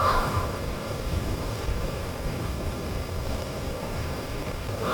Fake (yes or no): yes